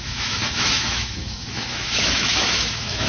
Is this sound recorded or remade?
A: remade